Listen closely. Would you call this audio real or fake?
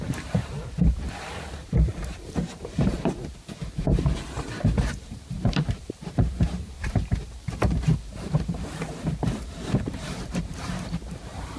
fake